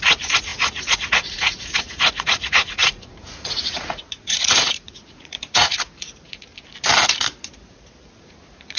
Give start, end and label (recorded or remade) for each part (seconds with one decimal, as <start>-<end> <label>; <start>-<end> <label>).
0.0-6.5 remade; 6.5-8.2 recorded; 8.2-8.8 remade